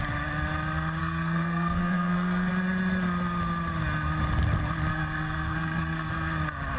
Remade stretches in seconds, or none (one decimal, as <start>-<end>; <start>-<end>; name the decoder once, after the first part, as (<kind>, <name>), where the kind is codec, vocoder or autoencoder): 1.0-2.5 (codec, SNAC); 4.9-6.1